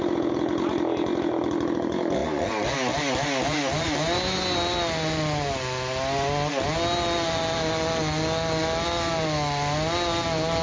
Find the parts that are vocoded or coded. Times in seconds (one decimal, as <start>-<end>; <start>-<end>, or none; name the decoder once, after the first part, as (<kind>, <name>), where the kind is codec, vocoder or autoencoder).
none